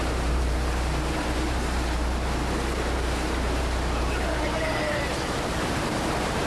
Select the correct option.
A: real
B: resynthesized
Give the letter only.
B